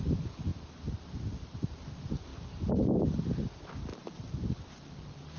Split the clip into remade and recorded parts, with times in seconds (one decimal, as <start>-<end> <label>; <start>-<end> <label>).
0.0-3.9 recorded; 3.9-5.4 remade